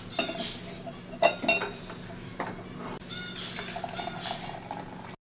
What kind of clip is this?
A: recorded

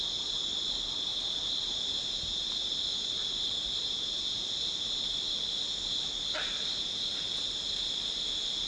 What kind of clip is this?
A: recorded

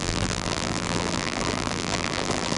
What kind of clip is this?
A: remade